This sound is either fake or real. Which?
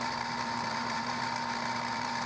fake